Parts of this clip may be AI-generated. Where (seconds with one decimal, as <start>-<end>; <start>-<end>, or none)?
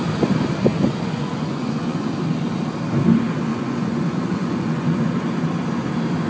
0.7-2.1; 3.5-5.1